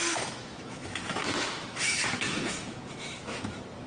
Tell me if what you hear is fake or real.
fake